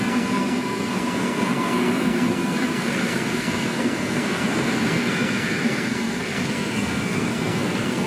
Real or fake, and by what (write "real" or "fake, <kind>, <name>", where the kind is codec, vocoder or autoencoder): fake, codec, SNAC